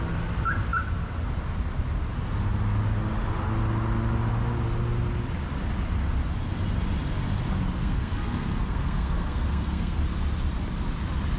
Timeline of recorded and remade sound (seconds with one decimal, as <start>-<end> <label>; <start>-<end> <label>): 0.0-7.8 recorded; 7.8-10.0 remade; 10.0-11.4 recorded